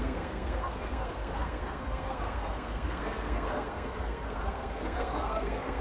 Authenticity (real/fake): fake